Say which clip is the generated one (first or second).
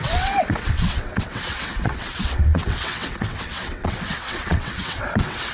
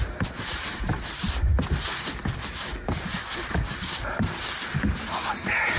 first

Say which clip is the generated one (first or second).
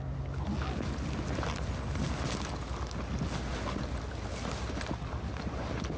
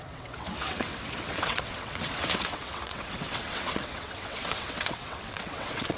second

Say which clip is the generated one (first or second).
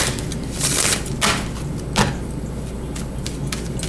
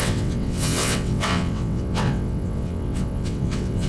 second